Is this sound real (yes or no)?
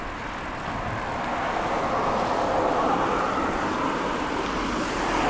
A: yes